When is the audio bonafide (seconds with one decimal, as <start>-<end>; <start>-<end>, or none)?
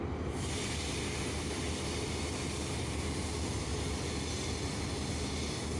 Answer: 0.0-5.8